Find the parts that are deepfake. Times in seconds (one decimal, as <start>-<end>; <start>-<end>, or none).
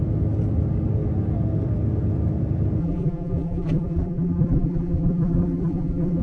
2.8-6.2